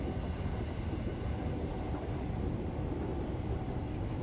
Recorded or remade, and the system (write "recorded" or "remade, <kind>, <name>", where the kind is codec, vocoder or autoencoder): recorded